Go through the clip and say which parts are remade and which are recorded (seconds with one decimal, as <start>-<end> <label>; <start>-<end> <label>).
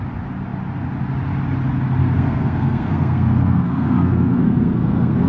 0.0-2.0 recorded; 2.0-5.3 remade